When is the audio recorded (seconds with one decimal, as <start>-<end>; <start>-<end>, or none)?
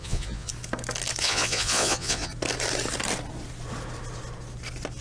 0.5-1.2; 2.3-5.0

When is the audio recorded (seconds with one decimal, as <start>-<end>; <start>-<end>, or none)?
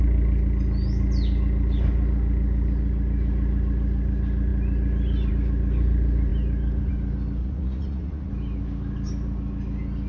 0.0-7.4; 8.3-10.1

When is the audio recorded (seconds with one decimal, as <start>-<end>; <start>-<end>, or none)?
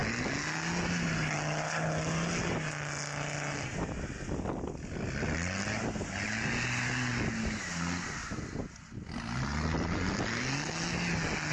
0.0-11.5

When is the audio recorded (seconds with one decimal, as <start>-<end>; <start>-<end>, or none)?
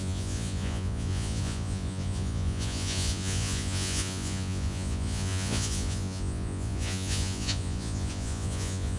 none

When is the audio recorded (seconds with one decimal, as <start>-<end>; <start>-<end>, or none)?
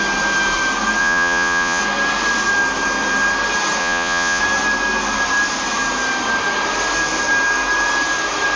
0.0-1.0; 1.8-3.8; 4.4-8.6